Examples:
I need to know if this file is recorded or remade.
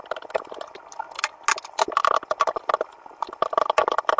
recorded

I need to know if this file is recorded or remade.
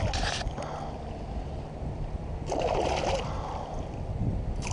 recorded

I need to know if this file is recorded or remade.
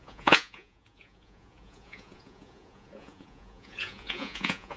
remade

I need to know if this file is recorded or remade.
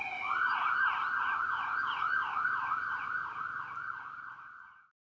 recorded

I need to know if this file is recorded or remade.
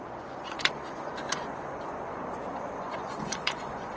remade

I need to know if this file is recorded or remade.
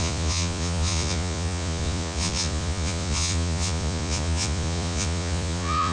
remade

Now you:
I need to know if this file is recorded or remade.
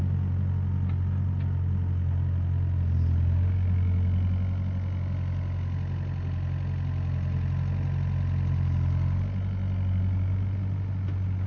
recorded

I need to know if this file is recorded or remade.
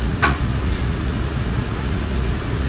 remade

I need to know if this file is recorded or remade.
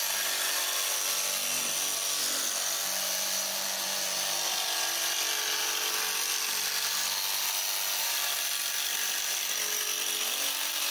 recorded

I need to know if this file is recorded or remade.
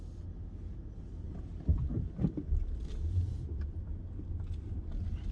recorded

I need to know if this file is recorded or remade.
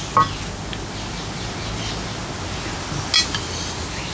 recorded